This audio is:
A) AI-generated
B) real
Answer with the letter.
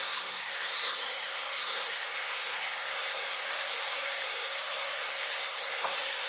A